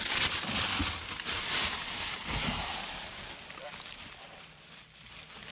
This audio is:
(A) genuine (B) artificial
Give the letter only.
A